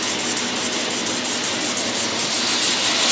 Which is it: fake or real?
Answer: real